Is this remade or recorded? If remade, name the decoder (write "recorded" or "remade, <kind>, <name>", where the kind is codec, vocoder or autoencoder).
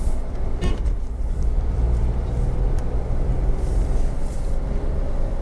remade, vocoder, BigVGAN v2